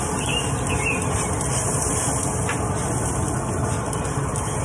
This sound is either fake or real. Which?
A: real